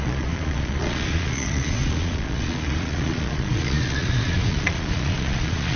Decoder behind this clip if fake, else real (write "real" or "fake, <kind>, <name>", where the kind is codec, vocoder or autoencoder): fake, vocoder, Vocos